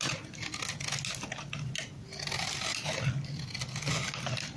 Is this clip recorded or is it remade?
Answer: recorded